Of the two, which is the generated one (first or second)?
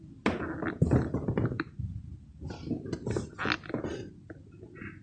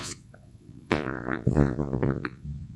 second